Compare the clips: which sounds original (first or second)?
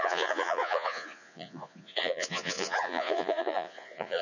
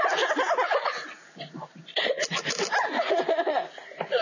second